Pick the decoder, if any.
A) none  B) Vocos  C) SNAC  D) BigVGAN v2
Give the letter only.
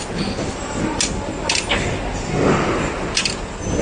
A